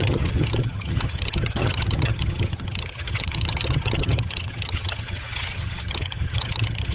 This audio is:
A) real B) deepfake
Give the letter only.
B